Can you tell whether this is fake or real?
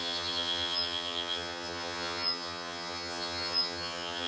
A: fake